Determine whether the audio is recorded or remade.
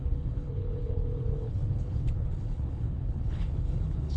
remade